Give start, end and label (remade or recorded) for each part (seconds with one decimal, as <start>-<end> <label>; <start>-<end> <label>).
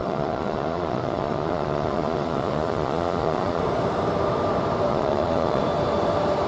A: 0.0-3.6 remade; 3.6-4.9 recorded; 4.9-5.6 remade; 5.6-6.5 recorded